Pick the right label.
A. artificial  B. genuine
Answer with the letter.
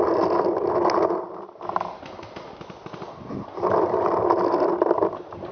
B